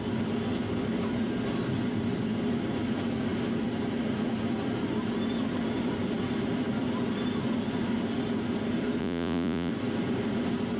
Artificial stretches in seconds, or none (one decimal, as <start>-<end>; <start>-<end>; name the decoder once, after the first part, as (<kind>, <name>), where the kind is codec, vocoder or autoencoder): 9.0-9.7 (vocoder, Vocos)